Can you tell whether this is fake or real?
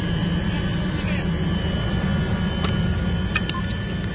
real